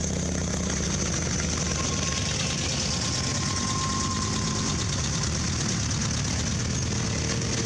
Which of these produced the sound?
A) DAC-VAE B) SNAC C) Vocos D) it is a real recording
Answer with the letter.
D